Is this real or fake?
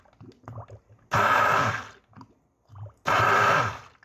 real